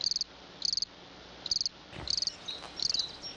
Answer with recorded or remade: recorded